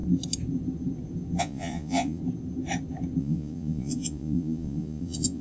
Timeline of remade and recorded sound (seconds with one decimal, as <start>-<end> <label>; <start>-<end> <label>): 0.0-1.4 recorded; 1.4-2.2 remade; 2.2-3.2 recorded; 3.2-5.4 remade